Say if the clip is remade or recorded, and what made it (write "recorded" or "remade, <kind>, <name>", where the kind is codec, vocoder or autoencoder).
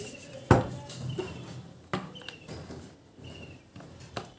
recorded